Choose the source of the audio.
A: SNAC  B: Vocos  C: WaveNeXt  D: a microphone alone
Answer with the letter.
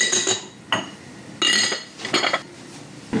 D